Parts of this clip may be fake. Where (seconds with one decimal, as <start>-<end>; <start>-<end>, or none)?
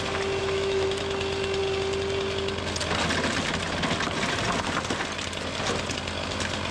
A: 0.4-1.0